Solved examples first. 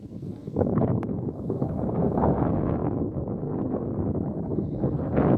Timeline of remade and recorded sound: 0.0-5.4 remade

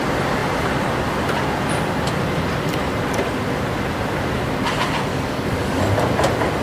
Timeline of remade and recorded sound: 0.0-5.1 recorded; 5.1-5.8 remade; 5.8-6.6 recorded

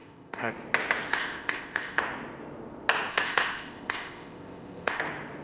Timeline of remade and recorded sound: 0.0-0.5 remade; 0.5-1.1 recorded; 1.1-2.0 remade; 2.0-3.1 recorded; 3.1-5.0 remade; 5.0-5.4 recorded

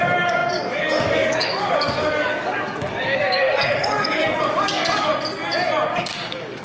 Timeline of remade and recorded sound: 0.0-5.1 remade; 5.1-6.0 recorded; 6.0-6.6 remade

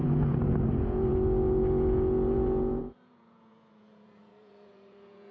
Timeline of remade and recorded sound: 0.0-5.3 remade

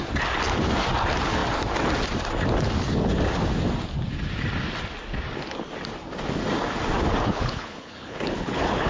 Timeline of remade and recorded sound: 0.0-7.2 recorded; 7.2-8.9 remade